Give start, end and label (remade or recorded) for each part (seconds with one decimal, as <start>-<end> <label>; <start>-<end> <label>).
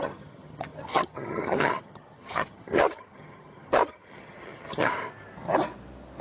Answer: 0.0-4.9 remade; 4.9-6.2 recorded